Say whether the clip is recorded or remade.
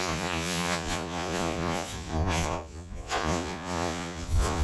remade